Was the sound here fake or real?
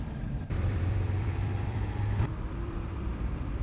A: fake